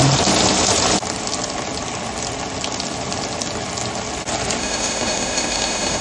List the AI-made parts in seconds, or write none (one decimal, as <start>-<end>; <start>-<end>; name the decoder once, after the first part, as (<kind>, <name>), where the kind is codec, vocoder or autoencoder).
4.6-6.0 (autoencoder, DAC-VAE)

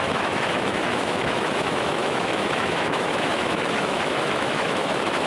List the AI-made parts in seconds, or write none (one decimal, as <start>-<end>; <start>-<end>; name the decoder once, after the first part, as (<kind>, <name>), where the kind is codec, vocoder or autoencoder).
0.0-5.3 (autoencoder, DAC-VAE)

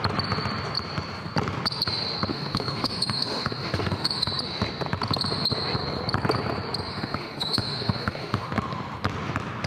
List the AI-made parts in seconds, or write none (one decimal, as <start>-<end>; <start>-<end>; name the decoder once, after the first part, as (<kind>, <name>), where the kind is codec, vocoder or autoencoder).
2.3-4.3 (autoencoder, DAC-VAE); 6.9-8.5

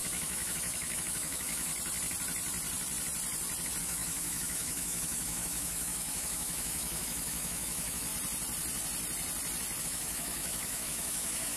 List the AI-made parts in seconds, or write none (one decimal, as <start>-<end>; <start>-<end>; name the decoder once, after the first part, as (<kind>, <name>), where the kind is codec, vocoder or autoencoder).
0.0-1.7 (autoencoder, DAC-VAE); 3.8-8.1; 9.8-11.6

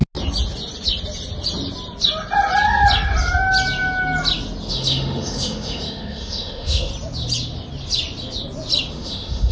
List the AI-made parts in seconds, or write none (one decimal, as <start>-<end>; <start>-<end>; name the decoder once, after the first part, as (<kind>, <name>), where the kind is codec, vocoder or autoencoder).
4.7-6.9 (autoencoder, DAC-VAE); 8.9-9.5

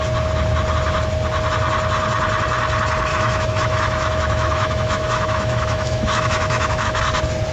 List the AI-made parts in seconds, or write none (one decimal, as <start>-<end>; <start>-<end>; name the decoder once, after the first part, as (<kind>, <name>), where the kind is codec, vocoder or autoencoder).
3.1-7.0 (autoencoder, DAC-VAE)